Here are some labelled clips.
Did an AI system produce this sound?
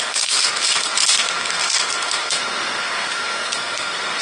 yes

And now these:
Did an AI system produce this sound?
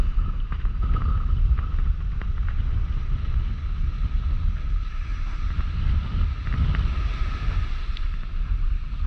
no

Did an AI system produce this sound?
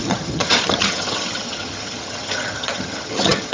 yes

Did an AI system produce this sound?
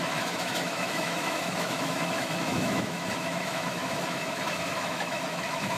yes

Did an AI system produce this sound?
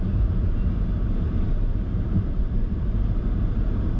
yes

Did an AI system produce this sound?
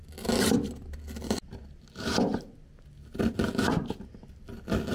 no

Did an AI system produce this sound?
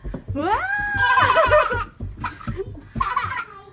yes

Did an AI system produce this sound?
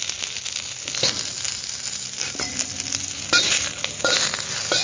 no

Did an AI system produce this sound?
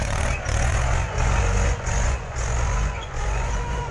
yes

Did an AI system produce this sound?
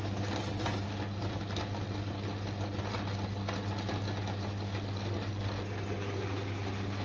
no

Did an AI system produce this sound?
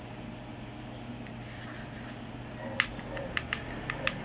no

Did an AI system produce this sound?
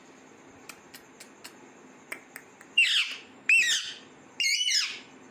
no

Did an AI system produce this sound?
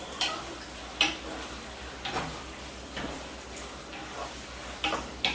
no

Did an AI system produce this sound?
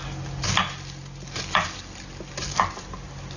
no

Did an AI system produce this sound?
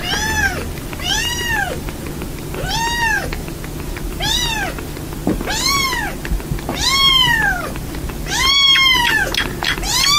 no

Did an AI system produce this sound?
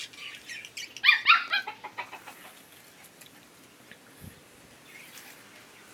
no